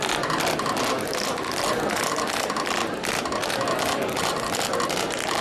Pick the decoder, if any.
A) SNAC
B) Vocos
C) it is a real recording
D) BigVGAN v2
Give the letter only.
C